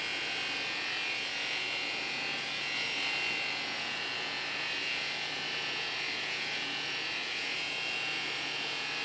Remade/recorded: remade